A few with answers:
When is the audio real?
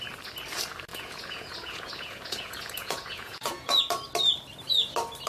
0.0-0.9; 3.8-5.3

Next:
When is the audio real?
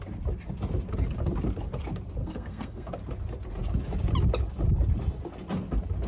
0.0-2.2; 2.9-6.1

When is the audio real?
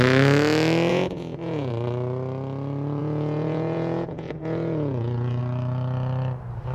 0.0-0.9; 1.7-3.0; 5.4-6.7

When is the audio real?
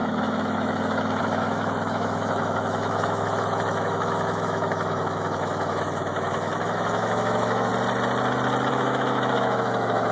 7.7-8.7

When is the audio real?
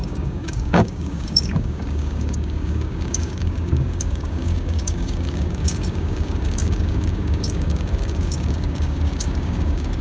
none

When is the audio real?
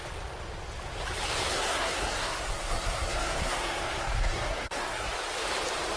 0.0-1.5; 5.1-6.0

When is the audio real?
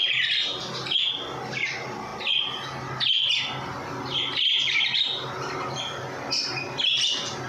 0.0-7.5